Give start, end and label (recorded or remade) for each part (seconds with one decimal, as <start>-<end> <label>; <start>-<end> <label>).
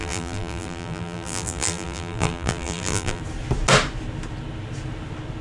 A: 0.0-3.2 remade; 3.2-5.4 recorded